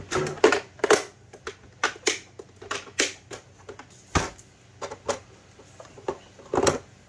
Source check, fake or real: real